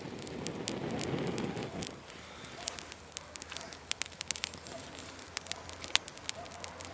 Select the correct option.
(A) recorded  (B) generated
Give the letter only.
A